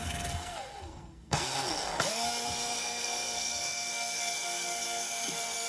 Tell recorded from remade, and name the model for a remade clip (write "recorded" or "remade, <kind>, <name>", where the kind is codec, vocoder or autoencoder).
remade, codec, SNAC